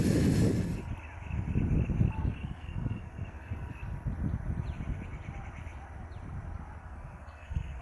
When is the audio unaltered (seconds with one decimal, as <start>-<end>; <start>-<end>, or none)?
0.0-2.2; 3.7-6.8